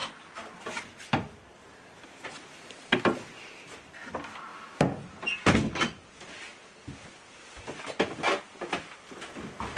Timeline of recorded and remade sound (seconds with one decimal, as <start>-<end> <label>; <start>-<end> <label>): 0.0-9.8 recorded